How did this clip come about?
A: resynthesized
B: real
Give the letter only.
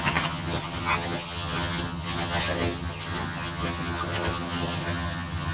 A